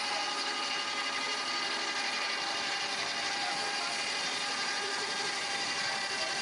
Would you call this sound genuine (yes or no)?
yes